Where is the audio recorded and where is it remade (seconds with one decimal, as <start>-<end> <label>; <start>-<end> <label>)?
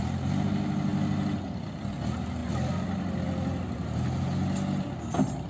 0.0-5.5 recorded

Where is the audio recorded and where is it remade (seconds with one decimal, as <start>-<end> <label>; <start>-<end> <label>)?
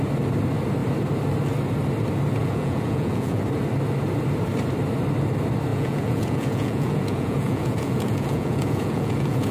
0.0-2.4 recorded; 2.4-3.4 remade; 3.4-5.7 recorded; 5.7-9.5 remade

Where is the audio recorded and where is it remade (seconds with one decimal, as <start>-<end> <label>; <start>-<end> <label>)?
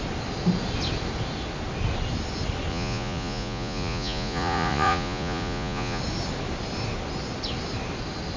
0.0-2.7 recorded; 2.7-6.0 remade; 6.0-8.4 recorded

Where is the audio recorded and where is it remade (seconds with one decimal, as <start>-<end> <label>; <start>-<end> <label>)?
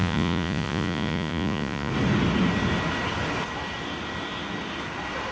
0.0-1.9 remade; 1.9-5.3 recorded